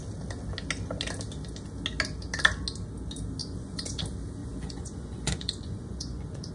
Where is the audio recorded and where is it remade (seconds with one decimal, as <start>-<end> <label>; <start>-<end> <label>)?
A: 0.0-3.4 recorded; 3.4-4.0 remade; 4.0-4.4 recorded; 4.4-6.5 remade